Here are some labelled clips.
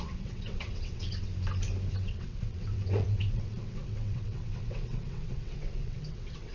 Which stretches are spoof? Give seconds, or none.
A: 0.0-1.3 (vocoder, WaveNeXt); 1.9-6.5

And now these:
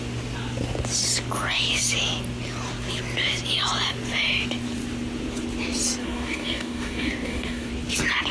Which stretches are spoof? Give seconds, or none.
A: 6.0-7.7 (codec, DAC)

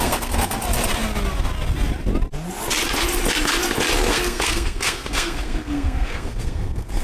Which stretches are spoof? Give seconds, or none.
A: 0.0-0.6 (codec, SNAC); 4.1-7.0

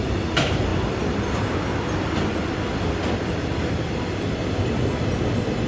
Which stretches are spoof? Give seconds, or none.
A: none

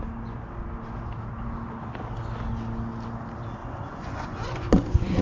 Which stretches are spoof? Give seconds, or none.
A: 3.6-5.2 (vocoder, Vocos)